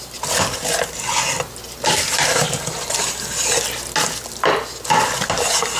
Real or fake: real